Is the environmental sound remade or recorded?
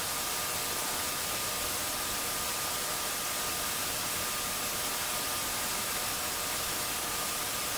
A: recorded